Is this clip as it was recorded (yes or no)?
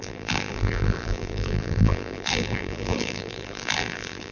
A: no